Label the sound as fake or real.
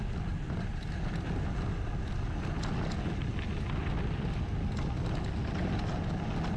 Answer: real